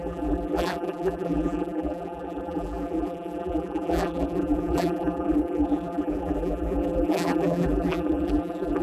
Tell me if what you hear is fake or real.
fake